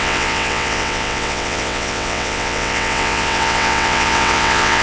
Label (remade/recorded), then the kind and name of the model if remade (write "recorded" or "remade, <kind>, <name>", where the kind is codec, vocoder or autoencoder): remade, vocoder, WaveNeXt